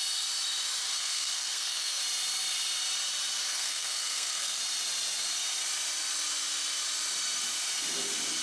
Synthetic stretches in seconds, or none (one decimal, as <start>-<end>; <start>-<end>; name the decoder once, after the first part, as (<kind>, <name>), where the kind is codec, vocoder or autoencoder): 0.9-2.0 (codec, SNAC); 3.5-4.6